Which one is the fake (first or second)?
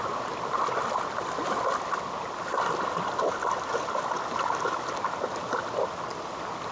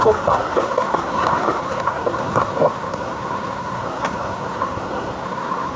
second